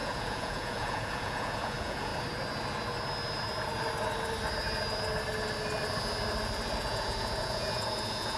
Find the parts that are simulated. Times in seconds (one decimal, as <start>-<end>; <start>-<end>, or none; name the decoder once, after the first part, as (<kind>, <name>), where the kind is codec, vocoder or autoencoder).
0.0-2.1 (vocoder, Vocos); 6.8-8.4